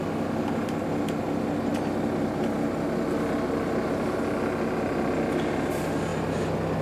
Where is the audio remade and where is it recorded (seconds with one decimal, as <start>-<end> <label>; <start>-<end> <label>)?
0.0-6.8 recorded